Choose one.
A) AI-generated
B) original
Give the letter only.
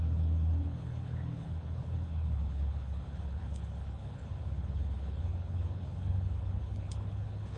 A